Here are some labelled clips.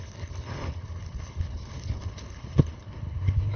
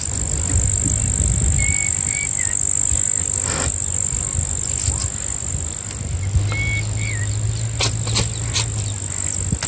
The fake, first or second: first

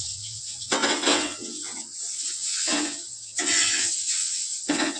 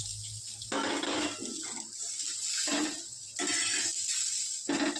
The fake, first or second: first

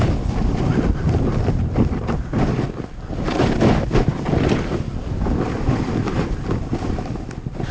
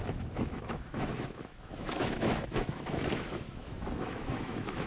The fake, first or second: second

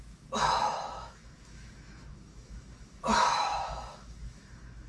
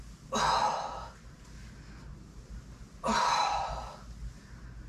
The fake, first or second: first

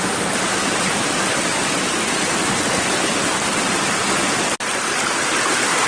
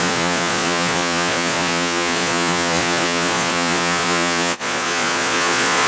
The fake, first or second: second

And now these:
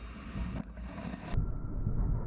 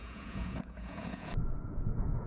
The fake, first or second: second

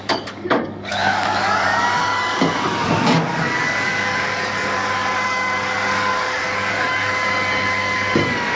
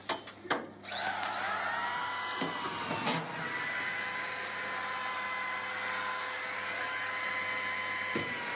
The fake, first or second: first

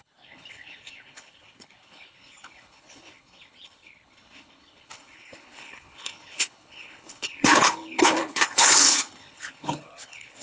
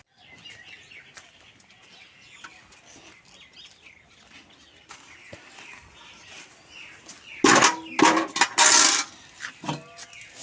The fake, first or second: first